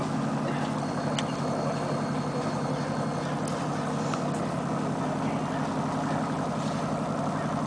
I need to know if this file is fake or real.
real